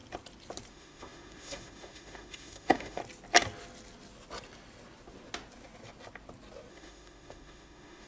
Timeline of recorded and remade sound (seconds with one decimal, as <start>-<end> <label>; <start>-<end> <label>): 0.0-0.7 recorded; 0.7-3.0 remade; 3.0-6.7 recorded; 6.7-8.1 remade